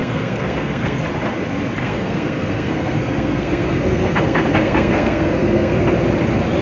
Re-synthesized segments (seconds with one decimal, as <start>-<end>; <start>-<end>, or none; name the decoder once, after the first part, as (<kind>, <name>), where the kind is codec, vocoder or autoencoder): 0.0-1.0 (codec, SNAC); 1.8-5.8